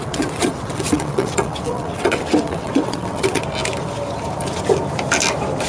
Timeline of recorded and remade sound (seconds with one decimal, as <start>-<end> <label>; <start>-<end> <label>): 0.0-3.4 remade; 3.4-5.7 recorded